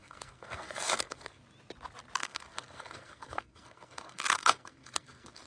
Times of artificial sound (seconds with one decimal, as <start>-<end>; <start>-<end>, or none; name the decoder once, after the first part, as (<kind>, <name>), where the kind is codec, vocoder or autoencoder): 0.0-1.4 (codec, SNAC); 2.2-5.5